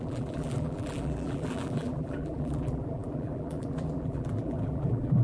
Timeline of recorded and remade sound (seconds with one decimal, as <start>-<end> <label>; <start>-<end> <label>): 0.0-5.2 remade